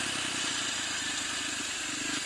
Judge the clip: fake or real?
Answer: real